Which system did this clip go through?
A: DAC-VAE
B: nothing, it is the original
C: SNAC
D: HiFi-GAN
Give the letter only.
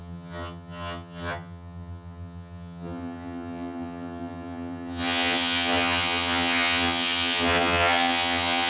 D